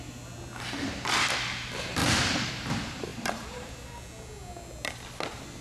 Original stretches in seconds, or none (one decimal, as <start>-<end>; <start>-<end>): 0.0-2.0; 2.5-3.1; 3.7-5.6